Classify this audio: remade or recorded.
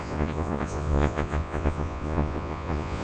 remade